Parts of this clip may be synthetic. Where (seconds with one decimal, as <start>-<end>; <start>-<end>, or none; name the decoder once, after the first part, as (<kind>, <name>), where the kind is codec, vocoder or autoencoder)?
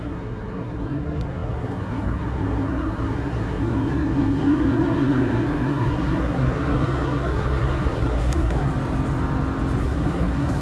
0.0-8.7 (codec, SNAC); 9.8-10.6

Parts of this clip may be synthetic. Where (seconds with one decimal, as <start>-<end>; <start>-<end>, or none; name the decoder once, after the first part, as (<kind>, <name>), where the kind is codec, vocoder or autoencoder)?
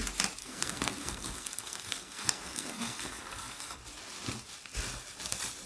0.4-3.8 (codec, SNAC)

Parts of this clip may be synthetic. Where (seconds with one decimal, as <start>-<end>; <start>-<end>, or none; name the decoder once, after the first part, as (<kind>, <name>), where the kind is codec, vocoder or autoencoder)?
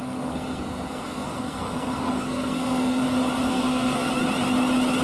0.0-3.0 (codec, SNAC); 3.5-4.1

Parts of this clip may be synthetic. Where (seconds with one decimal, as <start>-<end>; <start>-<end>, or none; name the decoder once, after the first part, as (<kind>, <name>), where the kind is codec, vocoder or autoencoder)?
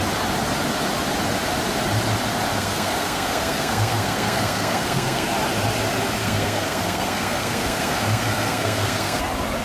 2.5-5.3 (codec, SNAC); 6.2-9.2